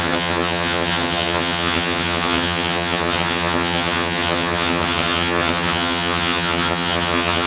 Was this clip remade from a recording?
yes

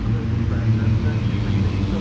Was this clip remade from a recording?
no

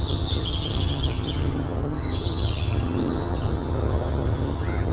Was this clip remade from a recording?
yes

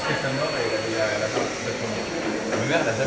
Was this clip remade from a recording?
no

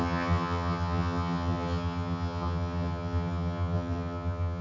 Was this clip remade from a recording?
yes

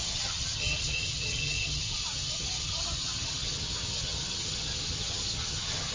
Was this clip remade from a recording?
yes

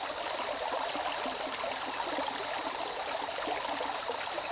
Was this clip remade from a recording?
no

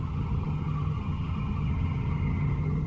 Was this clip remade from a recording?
yes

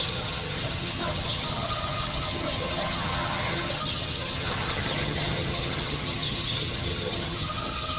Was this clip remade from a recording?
yes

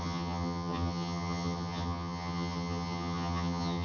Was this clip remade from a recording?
yes